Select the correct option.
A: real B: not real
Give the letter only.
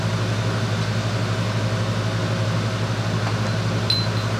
A